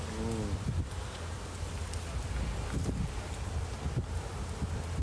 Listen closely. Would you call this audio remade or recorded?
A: recorded